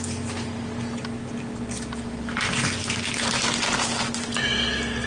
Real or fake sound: real